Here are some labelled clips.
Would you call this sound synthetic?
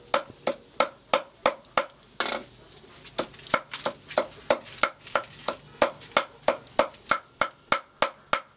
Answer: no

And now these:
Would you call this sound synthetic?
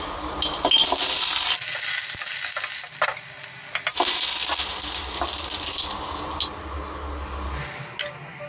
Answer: no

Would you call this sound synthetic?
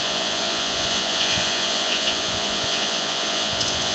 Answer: yes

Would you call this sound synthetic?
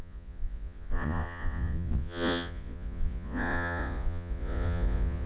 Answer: yes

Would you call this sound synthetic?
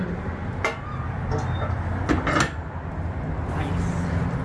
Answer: no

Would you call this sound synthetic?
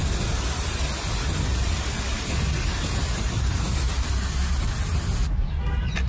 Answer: no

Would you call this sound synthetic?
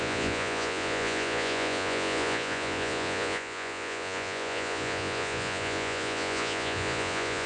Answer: yes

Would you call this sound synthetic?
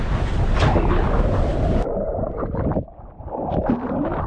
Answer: no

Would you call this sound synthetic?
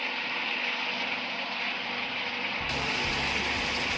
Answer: no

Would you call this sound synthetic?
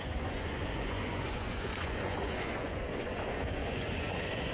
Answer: yes